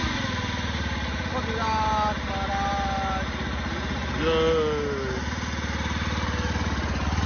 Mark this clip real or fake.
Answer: real